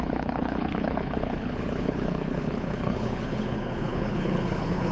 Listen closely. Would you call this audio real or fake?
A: fake